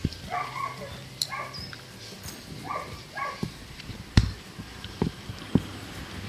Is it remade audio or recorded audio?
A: remade